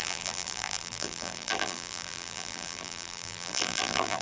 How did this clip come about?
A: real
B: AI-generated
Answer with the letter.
B